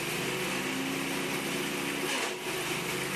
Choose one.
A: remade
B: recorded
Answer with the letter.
B